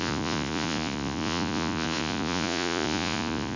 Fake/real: fake